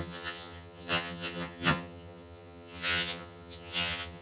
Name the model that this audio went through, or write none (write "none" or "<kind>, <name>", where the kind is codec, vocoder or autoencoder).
vocoder, HiFi-GAN